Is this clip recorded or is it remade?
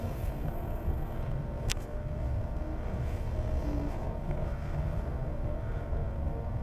remade